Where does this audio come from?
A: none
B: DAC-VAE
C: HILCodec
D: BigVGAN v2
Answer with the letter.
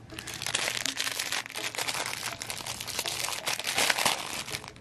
A